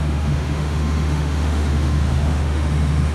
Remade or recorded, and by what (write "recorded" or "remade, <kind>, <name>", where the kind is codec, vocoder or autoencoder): remade, autoencoder, DAC-VAE